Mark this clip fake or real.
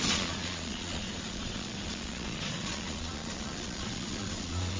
fake